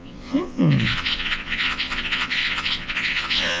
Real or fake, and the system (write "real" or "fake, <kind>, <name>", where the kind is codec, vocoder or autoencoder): fake, vocoder, Vocos